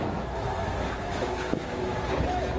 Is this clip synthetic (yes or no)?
yes